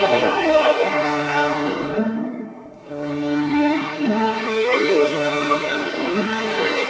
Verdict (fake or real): fake